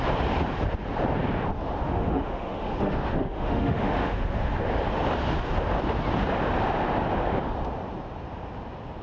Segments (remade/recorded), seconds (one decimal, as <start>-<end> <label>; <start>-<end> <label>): 0.0-1.8 recorded; 1.8-4.5 remade; 4.5-9.0 recorded